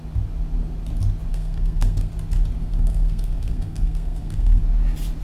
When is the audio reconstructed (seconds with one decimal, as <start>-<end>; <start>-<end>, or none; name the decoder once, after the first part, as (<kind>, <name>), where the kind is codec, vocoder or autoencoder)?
1.3-2.1 (codec, SNAC); 2.6-4.6

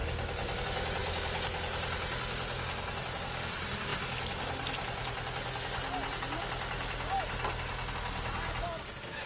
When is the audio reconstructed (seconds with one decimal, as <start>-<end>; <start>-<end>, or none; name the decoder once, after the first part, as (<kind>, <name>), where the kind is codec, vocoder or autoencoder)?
none

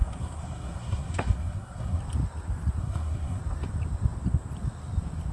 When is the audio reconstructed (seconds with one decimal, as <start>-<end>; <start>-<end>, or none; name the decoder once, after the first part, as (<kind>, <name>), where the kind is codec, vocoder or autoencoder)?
0.0-2.0 (codec, SNAC); 2.8-3.4

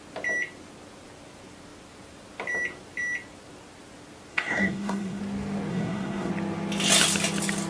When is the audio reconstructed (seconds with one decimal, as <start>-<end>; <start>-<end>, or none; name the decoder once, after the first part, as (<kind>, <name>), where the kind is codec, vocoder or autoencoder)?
4.3-5.2 (codec, SNAC); 5.7-6.3

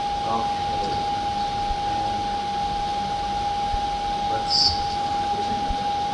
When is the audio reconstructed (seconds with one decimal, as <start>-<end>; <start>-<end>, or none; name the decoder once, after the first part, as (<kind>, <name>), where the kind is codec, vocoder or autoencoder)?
none